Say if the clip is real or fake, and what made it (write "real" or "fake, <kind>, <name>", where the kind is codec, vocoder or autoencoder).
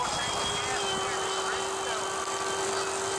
fake, vocoder, BigVGAN v2